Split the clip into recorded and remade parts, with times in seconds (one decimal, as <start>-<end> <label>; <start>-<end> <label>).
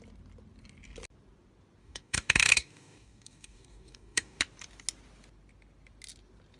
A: 0.0-1.8 recorded; 1.8-4.4 remade; 4.4-6.6 recorded